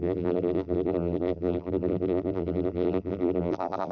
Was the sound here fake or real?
fake